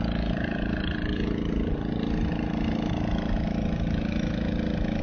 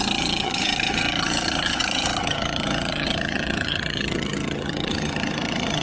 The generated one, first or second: second